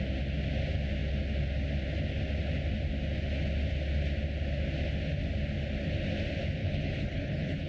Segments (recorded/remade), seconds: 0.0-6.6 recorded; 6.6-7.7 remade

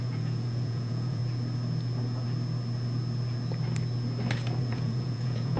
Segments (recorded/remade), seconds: 0.0-1.2 remade; 1.2-4.6 recorded; 4.6-5.6 remade

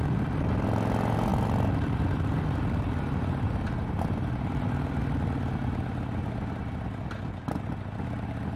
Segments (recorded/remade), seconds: 0.0-8.6 recorded

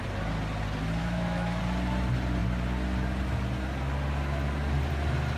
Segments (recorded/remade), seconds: 0.0-1.0 recorded; 1.0-1.6 remade; 1.6-5.4 recorded

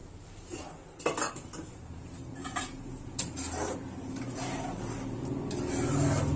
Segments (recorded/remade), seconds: 0.0-2.3 recorded; 2.3-3.2 remade; 3.2-6.4 recorded

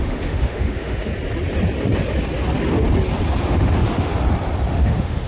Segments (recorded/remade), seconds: 0.0-1.1 remade; 1.1-3.4 recorded; 3.4-4.1 remade; 4.1-4.7 recorded; 4.7-5.3 remade

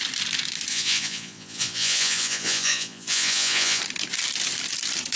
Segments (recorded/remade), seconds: 0.0-0.7 recorded; 0.7-3.8 remade; 3.8-5.2 recorded